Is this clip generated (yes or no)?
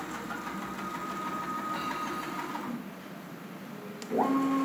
no